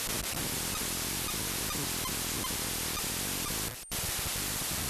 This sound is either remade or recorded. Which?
recorded